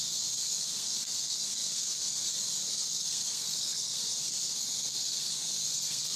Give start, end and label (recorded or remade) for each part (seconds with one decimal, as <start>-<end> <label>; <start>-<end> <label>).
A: 0.0-6.2 remade